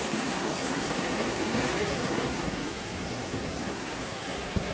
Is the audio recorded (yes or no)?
no